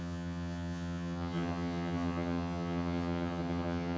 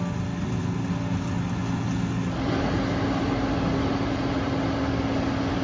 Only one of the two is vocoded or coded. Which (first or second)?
first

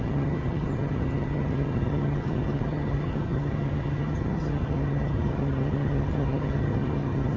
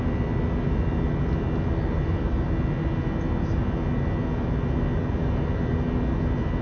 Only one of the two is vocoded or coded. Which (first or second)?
first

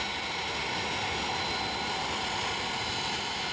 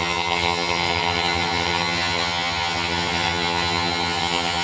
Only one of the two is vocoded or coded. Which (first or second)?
second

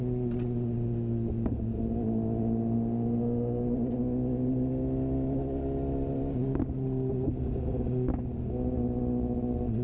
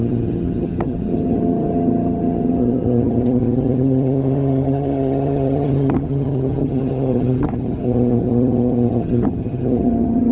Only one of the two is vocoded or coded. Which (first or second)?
second